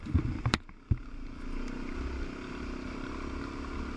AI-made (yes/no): no